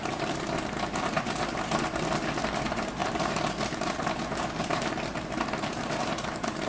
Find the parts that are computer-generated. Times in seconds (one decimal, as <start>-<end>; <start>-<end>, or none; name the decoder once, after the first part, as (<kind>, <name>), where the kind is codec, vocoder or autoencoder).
0.0-6.7 (vocoder, BigVGAN v2)